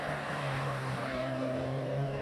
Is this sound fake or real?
fake